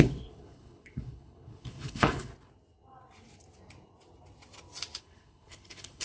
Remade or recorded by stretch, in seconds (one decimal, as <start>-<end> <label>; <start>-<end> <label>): 0.0-2.3 remade; 2.3-5.0 recorded; 5.0-6.0 remade